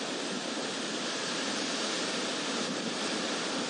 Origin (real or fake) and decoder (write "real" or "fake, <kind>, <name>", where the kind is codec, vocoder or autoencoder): real